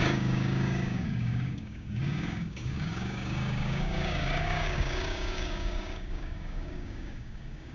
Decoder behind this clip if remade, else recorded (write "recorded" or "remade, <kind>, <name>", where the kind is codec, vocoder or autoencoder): remade, codec, DAC